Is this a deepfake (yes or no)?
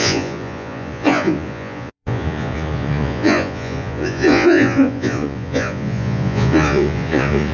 yes